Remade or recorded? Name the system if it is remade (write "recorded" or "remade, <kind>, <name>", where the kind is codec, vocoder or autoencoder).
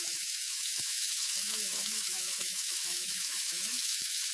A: remade, autoencoder, DAC-VAE